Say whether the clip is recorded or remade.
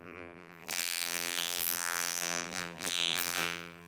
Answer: remade